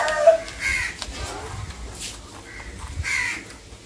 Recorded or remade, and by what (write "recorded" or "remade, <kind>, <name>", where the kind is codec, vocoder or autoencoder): recorded